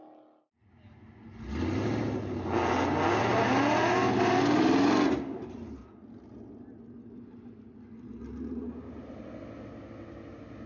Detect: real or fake real